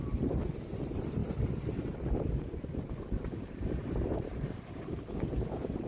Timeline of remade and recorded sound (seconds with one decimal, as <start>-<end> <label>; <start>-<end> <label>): 0.0-5.9 remade

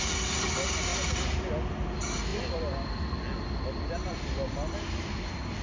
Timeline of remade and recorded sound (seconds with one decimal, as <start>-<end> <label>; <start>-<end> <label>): 0.0-5.6 recorded